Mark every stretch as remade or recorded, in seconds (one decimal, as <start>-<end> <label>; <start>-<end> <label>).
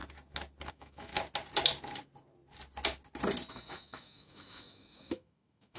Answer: 0.0-0.7 recorded; 0.7-1.1 remade; 1.1-3.5 recorded; 3.5-5.8 remade